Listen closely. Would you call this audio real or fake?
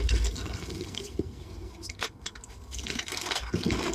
fake